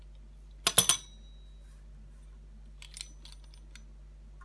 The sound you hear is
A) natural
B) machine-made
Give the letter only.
A